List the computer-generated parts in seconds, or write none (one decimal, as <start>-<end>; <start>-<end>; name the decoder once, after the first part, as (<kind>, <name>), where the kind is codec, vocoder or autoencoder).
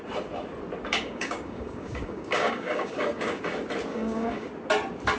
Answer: 0.9-3.4 (codec, DAC); 3.9-4.5